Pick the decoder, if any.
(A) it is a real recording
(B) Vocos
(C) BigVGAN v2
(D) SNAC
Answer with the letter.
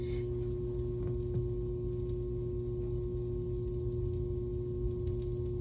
A